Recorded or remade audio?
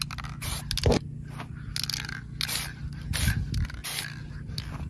recorded